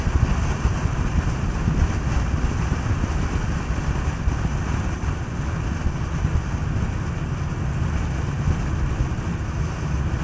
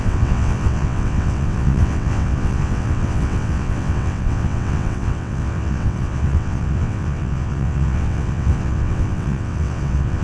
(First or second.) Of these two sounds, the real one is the first